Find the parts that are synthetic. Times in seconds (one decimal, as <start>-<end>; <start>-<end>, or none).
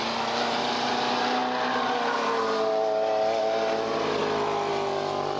none